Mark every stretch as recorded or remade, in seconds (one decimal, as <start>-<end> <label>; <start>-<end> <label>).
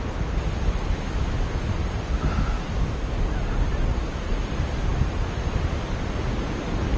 0.0-1.8 recorded; 1.8-2.6 remade; 2.6-3.7 recorded; 3.7-4.4 remade; 4.4-7.0 recorded